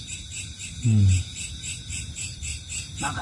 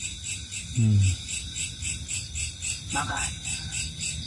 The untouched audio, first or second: second